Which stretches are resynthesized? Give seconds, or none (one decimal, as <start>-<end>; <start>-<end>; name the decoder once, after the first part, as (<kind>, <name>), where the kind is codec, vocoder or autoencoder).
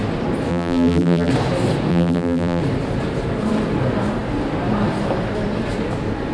0.5-1.3 (vocoder, BigVGAN v2); 1.9-2.6